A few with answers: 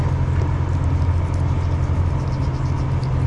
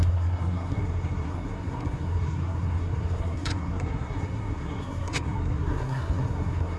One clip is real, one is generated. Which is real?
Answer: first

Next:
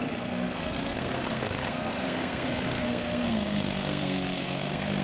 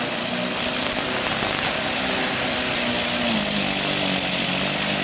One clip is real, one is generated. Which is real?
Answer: second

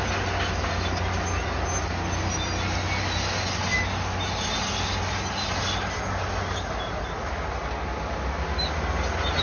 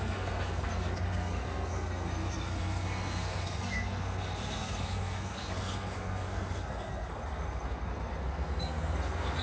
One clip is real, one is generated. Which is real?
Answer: first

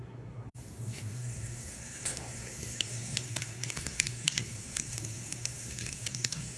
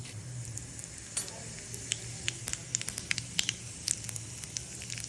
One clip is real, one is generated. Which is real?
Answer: second